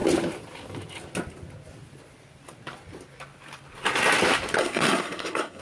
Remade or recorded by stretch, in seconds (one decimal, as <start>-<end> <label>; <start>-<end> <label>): 0.0-4.6 recorded; 4.6-5.6 remade